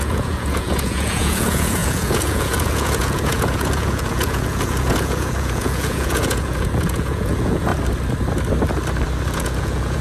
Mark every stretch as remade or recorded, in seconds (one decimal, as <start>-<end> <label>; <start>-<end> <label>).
0.0-7.7 remade; 7.7-9.3 recorded; 9.3-10.0 remade